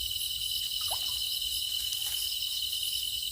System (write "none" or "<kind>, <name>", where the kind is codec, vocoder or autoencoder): none